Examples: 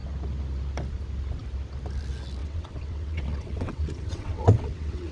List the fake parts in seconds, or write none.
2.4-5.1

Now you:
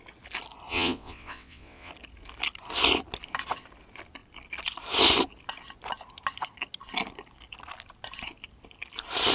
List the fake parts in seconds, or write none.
0.7-1.9

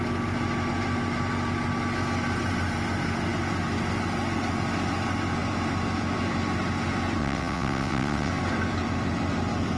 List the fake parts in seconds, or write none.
7.2-8.3

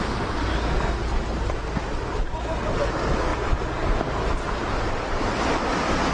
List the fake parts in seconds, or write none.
none